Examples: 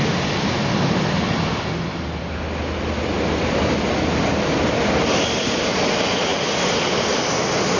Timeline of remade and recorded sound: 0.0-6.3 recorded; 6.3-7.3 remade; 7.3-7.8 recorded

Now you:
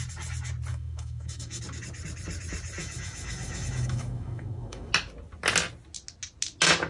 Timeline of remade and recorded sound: 0.0-0.7 recorded; 0.7-1.6 remade; 1.6-2.8 recorded; 2.8-4.9 remade; 4.9-6.9 recorded

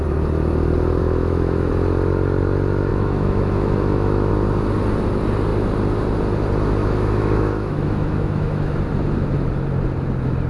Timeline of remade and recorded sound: 0.0-1.0 recorded; 1.0-1.7 remade; 1.7-2.9 recorded; 2.9-4.3 remade; 4.3-6.8 recorded; 6.8-8.8 remade; 8.8-10.5 recorded

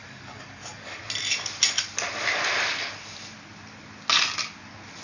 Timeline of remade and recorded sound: 0.0-1.0 remade; 1.0-5.0 recorded